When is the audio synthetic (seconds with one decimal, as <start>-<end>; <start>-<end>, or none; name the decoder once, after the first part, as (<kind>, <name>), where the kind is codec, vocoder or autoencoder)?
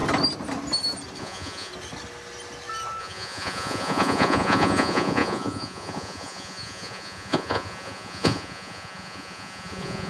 1.2-1.7 (vocoder, Vocos); 3.0-10.1